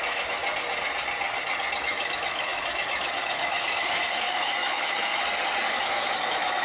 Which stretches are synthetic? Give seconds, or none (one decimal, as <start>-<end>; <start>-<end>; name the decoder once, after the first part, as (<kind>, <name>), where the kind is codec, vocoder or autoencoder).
0.0-0.4 (autoencoder, DAC-VAE); 1.8-5.1; 5.7-6.6